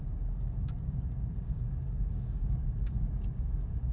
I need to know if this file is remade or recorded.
remade